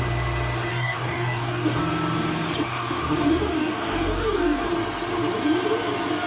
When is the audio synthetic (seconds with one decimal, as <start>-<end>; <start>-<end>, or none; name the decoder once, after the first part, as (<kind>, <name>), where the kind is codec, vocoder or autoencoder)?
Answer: 0.7-1.8 (codec, DAC); 2.7-4.7